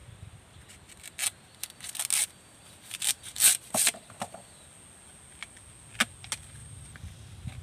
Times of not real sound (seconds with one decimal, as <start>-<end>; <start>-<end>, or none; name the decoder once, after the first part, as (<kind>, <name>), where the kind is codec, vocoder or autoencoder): 3.5-4.6 (vocoder, BigVGAN v2); 6.6-7.6